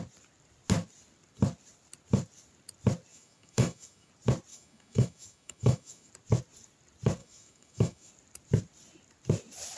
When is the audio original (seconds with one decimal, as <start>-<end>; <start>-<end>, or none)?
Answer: 0.0-3.1; 4.1-4.5; 6.1-7.2; 8.1-9.8